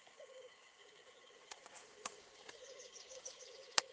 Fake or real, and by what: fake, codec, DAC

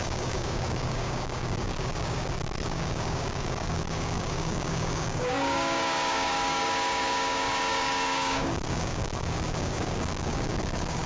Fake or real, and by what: fake, codec, DAC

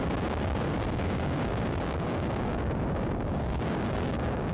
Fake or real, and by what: fake, codec, DAC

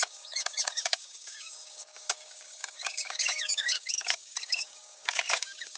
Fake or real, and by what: fake, codec, DAC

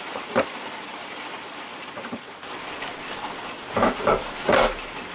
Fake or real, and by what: real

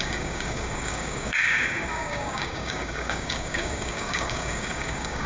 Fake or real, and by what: fake, codec, DAC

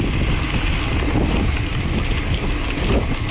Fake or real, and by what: real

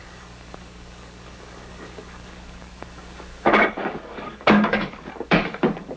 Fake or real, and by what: fake, codec, DAC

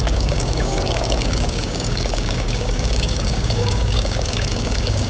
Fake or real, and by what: fake, codec, DAC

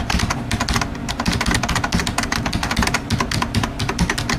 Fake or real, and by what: real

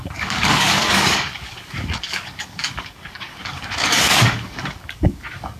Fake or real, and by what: fake, codec, DAC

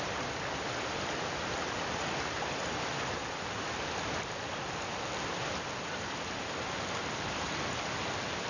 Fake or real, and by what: real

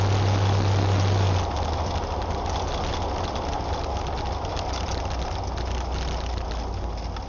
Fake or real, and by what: real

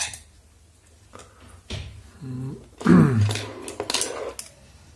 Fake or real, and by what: real